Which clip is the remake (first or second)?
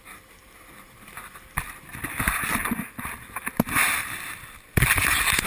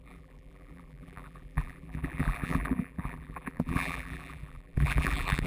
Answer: second